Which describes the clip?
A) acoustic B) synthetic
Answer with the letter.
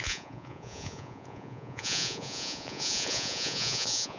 B